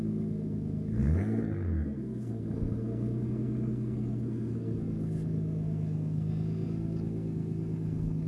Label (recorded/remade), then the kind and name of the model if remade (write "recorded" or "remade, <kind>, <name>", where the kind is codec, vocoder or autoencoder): remade, codec, SNAC